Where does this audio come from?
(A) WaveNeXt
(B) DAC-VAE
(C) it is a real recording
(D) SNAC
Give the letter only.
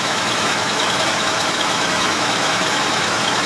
B